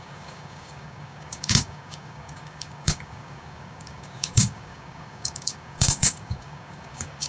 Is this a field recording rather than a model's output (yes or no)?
no